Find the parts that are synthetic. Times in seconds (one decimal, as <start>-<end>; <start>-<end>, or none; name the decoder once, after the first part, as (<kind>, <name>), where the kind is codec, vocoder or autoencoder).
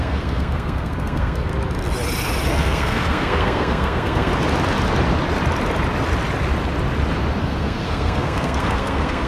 0.0-1.5 (codec, SNAC); 2.5-4.3; 7.4-9.3